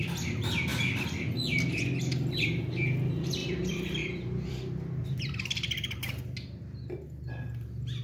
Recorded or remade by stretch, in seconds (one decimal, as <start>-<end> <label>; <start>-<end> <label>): 0.0-3.4 recorded; 3.4-5.1 remade; 5.1-8.0 recorded